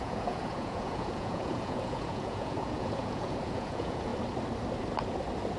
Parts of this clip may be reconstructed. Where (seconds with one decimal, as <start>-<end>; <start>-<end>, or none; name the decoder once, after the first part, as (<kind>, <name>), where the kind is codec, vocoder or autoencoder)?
0.0-4.1 (vocoder, Vocos)